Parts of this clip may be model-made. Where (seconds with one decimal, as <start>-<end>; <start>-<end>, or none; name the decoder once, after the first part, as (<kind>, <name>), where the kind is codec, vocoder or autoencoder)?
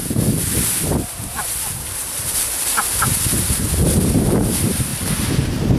1.0-4.9 (vocoder, BigVGAN v2)